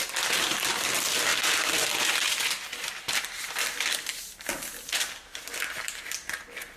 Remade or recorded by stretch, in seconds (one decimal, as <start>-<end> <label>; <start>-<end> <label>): 0.0-6.8 recorded